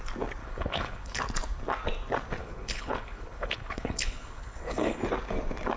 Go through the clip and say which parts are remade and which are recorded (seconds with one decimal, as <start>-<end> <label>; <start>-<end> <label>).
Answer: 0.0-0.4 recorded; 0.4-1.2 remade; 1.2-2.4 recorded; 2.4-5.0 remade; 5.0-5.8 recorded